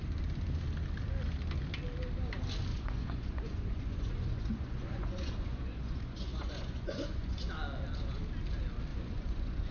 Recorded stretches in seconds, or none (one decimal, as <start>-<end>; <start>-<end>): 0.0-2.7; 7.5-8.9